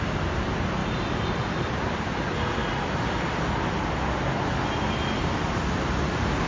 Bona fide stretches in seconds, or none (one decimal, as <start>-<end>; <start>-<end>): 0.0-6.5